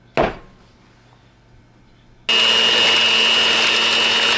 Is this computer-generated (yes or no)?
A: no